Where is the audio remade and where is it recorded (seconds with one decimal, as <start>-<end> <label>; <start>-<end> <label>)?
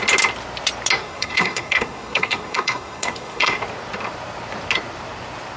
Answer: 0.0-1.0 recorded; 1.0-3.6 remade; 3.6-5.6 recorded